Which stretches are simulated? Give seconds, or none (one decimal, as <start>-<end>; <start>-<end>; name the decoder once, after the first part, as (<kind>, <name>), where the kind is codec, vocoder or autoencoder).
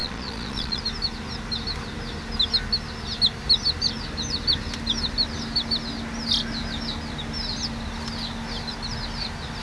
0.0-0.8 (vocoder, Vocos)